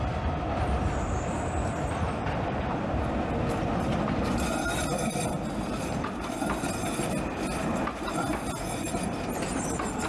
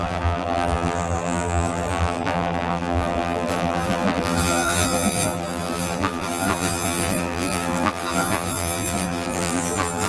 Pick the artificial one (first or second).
second